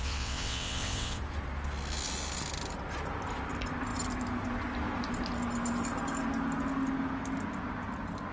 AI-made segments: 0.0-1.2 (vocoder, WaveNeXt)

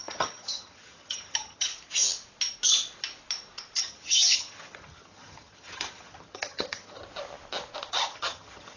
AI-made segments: 0.0-1.7 (vocoder, HiFi-GAN); 3.8-7.0; 7.9-8.8

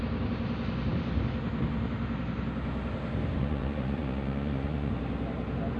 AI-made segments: 3.4-4.9 (vocoder, Vocos)